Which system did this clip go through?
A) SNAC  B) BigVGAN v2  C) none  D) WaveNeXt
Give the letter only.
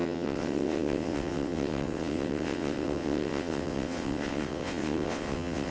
D